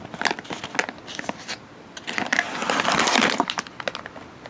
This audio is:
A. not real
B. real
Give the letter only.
B